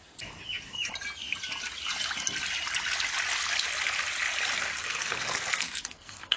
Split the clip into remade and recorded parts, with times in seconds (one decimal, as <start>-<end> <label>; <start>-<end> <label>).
0.0-4.8 recorded; 4.8-6.4 remade